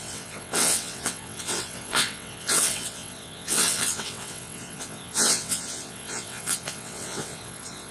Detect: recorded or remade remade